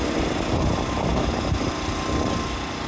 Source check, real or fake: real